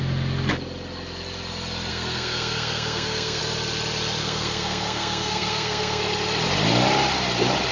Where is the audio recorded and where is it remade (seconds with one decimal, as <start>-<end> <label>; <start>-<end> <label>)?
0.0-1.9 recorded; 1.9-3.4 remade; 3.4-4.2 recorded; 4.2-6.0 remade; 6.0-7.7 recorded